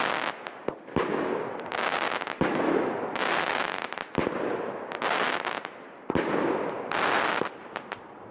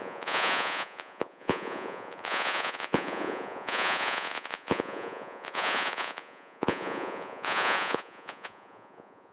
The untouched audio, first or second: first